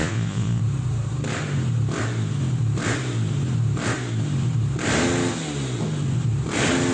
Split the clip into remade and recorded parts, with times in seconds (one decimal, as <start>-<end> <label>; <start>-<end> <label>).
0.0-0.6 remade; 0.6-6.9 recorded